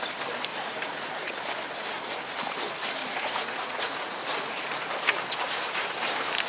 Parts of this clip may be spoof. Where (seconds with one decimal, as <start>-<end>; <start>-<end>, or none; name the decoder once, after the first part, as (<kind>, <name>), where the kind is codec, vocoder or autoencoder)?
0.5-1.3 (vocoder, Vocos); 3.0-4.9